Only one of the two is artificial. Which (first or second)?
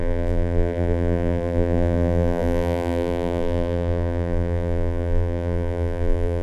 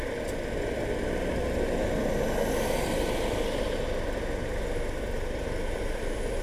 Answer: first